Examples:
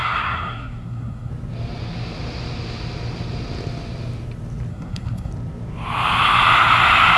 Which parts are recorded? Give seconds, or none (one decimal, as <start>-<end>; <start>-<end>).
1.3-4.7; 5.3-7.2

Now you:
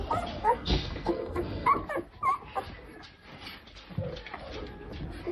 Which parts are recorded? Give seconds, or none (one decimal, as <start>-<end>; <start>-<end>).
0.0-0.4; 1.7-5.3

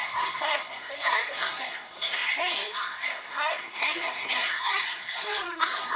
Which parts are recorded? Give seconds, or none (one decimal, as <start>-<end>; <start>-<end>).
none

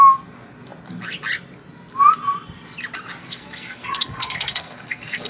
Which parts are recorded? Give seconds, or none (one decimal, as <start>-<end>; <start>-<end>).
0.0-3.2